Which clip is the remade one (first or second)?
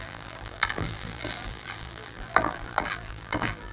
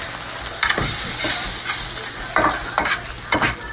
first